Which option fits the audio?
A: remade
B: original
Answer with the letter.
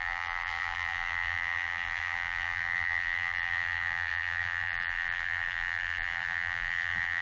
A